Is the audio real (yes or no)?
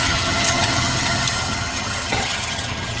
no